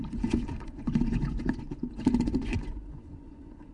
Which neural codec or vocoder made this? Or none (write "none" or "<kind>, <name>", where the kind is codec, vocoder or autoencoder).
vocoder, Vocos